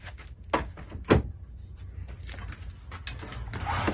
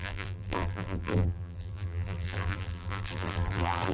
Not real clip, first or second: second